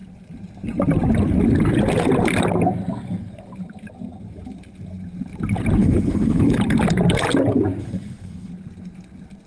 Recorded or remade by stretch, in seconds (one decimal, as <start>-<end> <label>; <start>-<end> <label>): 0.0-5.8 recorded; 5.8-6.6 remade; 6.6-7.8 recorded; 7.8-8.5 remade; 8.5-9.5 recorded